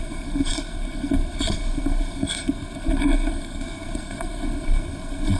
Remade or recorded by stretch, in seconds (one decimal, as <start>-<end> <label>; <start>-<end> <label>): 0.0-5.4 remade

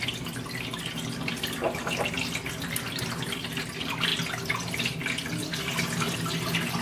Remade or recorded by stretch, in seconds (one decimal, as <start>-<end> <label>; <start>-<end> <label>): 0.0-6.8 recorded

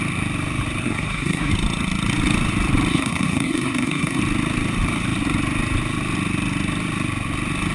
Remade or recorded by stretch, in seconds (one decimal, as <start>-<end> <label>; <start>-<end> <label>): 0.0-0.8 recorded; 0.8-1.5 remade; 1.5-2.9 recorded; 2.9-4.2 remade; 4.2-7.7 recorded

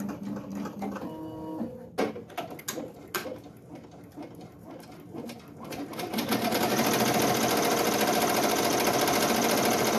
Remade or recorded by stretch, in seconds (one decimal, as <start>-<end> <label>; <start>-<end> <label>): 0.0-10.0 recorded

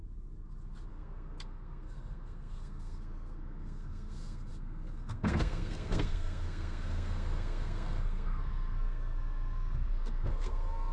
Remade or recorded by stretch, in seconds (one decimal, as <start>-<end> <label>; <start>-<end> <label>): 0.0-0.9 recorded; 0.9-10.9 remade

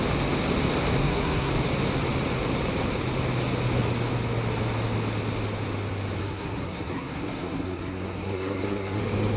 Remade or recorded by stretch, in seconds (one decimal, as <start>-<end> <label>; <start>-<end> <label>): 0.0-1.0 recorded; 1.0-1.5 remade; 1.5-6.2 recorded; 6.2-9.0 remade; 9.0-9.4 recorded

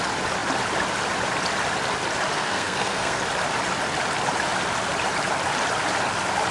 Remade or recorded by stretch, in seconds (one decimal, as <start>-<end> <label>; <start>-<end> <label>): 0.0-2.3 recorded; 2.3-3.2 remade; 3.2-6.5 recorded